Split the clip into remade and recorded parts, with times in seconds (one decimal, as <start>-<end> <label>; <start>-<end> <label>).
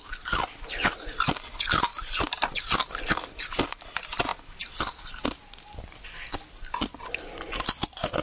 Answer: 0.0-8.2 recorded